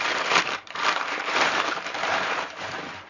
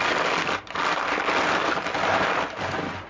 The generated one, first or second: first